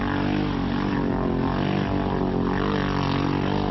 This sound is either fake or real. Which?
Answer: real